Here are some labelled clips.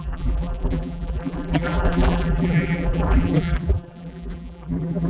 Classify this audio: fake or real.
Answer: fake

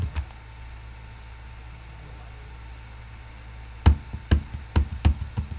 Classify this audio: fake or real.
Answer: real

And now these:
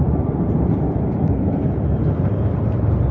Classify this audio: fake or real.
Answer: fake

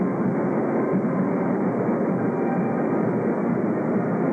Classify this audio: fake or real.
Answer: real